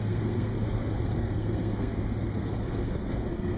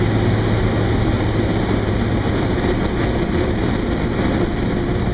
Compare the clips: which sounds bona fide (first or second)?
second